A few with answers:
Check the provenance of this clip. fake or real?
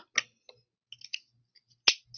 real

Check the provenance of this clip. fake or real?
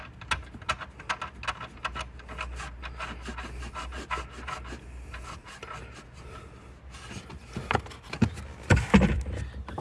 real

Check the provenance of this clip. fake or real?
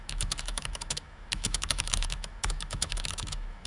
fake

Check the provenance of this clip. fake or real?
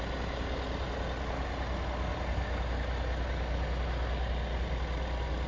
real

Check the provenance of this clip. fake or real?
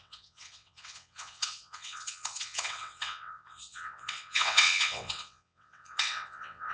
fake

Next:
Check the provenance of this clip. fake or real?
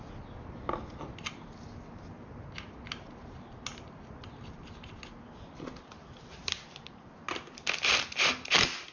real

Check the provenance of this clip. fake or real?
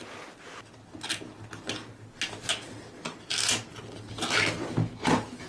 real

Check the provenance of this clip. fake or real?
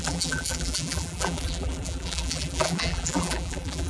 fake